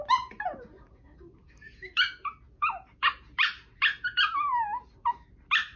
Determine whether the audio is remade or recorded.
recorded